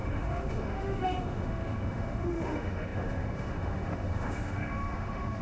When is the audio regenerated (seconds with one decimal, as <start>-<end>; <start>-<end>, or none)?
0.0-5.4